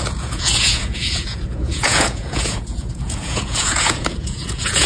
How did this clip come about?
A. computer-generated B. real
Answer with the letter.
A